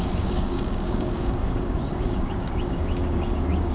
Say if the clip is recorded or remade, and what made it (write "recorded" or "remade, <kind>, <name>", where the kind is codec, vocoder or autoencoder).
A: remade, codec, DAC